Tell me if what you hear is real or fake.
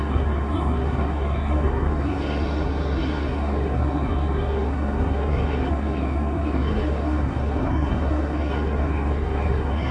fake